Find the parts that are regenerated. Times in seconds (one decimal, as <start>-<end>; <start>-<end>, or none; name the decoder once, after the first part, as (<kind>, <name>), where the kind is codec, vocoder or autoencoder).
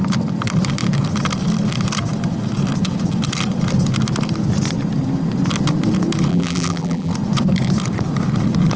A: 6.3-7.1 (vocoder, BigVGAN v2)